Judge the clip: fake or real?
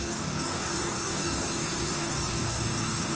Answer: fake